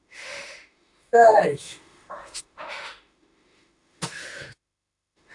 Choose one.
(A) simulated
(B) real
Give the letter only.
A